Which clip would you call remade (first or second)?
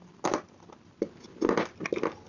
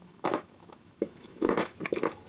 second